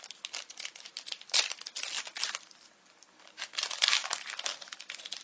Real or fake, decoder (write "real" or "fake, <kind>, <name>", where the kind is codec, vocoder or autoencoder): real